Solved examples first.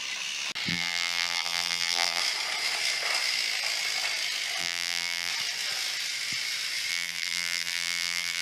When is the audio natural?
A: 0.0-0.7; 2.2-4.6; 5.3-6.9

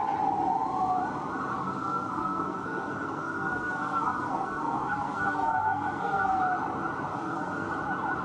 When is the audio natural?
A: 0.0-1.5; 6.4-7.1; 7.7-8.2

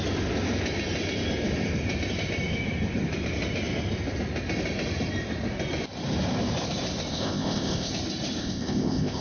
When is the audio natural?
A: 0.0-7.1; 7.9-8.4

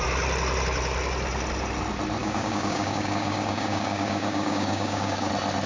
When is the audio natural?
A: 0.0-2.2; 5.3-5.7

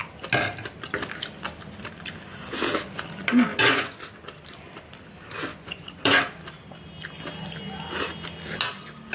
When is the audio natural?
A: 0.0-3.5; 4.0-5.5; 6.2-9.1

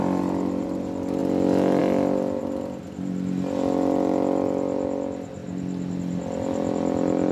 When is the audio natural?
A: 0.0-7.3